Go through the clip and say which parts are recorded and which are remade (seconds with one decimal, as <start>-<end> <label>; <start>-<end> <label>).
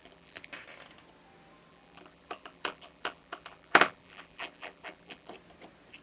0.0-0.5 remade; 0.5-1.7 recorded; 1.7-5.3 remade; 5.3-6.0 recorded